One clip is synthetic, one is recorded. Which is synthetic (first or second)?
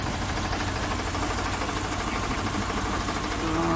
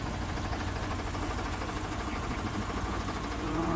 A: second